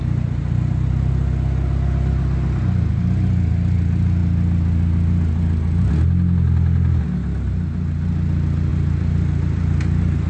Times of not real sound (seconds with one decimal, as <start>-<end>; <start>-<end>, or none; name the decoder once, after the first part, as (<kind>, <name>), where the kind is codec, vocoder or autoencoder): none

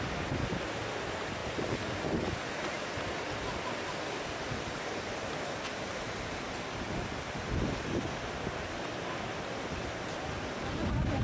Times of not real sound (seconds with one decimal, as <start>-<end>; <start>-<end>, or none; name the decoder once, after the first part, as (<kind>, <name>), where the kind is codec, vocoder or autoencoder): none